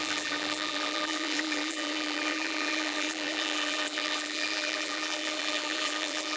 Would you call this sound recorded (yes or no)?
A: no